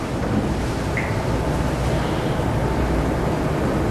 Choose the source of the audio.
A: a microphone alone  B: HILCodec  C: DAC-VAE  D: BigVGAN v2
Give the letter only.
A